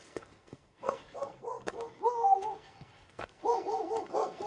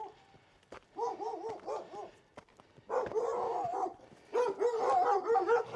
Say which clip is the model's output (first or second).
first